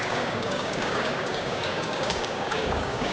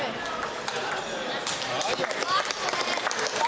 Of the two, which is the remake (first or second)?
first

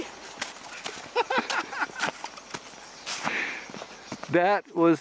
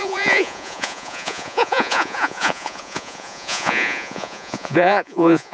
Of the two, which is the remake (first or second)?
second